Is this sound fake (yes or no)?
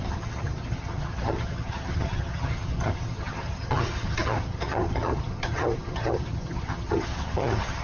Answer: yes